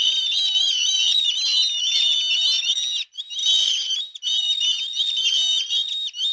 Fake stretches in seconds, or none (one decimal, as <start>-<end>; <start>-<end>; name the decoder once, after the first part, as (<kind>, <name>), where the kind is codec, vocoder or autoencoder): none